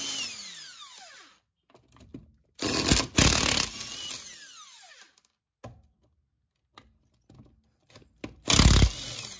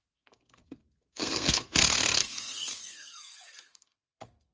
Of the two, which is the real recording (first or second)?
first